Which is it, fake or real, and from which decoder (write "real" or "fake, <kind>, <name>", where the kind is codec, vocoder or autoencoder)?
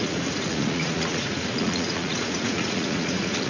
fake, vocoder, Vocos